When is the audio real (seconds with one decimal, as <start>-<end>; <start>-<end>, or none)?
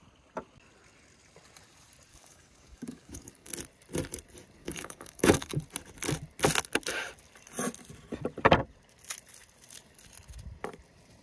0.0-2.1; 3.5-4.6; 5.6-11.2